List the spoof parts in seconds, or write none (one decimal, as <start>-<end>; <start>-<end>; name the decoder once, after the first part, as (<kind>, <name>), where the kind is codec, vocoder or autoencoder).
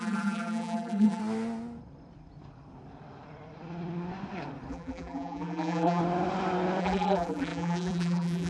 0.0-1.2 (vocoder, BigVGAN v2); 4.7-6.0; 6.8-8.5